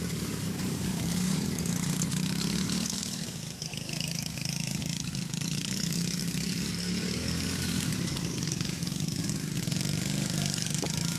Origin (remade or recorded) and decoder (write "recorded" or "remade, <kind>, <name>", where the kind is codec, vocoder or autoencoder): remade, codec, DAC